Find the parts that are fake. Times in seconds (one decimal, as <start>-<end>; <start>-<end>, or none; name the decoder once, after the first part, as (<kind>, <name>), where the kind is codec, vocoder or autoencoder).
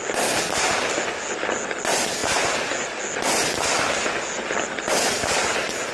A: none